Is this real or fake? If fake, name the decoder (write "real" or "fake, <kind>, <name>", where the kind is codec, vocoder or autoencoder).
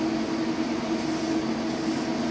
real